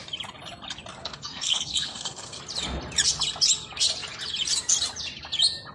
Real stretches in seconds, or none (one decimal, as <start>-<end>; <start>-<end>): 0.0-1.0; 2.4-5.7